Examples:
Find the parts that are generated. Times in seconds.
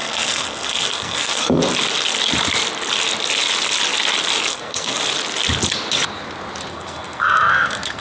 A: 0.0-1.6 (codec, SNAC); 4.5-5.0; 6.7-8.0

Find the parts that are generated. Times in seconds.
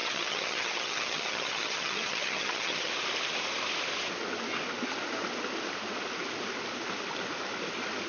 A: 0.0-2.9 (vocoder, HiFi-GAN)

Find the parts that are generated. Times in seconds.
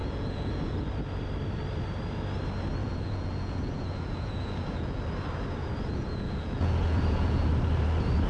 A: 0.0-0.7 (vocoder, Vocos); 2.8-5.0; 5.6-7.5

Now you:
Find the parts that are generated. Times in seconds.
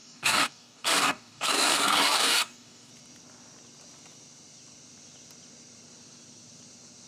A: 0.0-2.9 (codec, DAC)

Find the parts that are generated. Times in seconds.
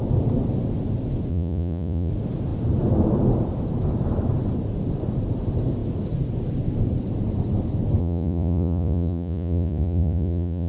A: 1.3-2.1 (vocoder, Vocos); 8.0-10.7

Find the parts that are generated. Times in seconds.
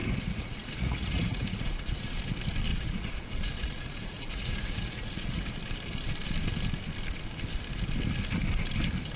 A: 0.0-2.2 (vocoder, Vocos); 2.7-5.5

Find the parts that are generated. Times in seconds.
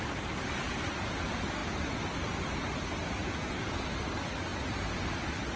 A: 3.2-3.9 (vocoder, Vocos)